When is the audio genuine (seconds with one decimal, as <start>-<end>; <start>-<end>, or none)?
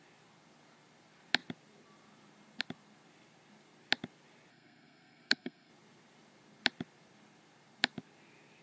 0.0-4.5; 5.7-8.6